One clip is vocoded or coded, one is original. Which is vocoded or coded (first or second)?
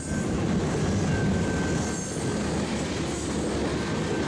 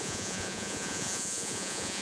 second